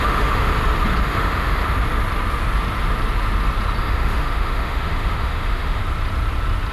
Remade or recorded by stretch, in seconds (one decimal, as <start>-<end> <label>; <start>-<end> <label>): 0.0-0.5 remade; 0.5-1.1 recorded; 1.1-1.6 remade; 1.6-3.8 recorded; 3.8-5.8 remade; 5.8-6.7 recorded